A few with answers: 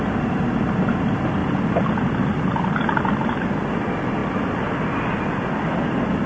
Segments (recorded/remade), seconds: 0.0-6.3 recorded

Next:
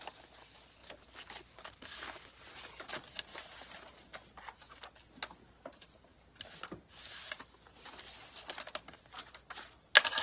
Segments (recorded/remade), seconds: 0.0-10.2 recorded

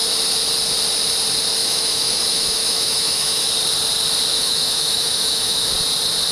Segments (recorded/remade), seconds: 0.0-1.6 recorded; 1.6-3.5 remade; 3.5-4.3 recorded; 4.3-5.7 remade; 5.7-6.3 recorded

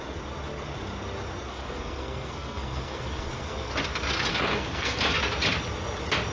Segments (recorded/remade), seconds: 0.0-1.5 recorded; 1.5-3.7 remade; 3.7-4.3 recorded; 4.3-5.0 remade; 5.0-6.3 recorded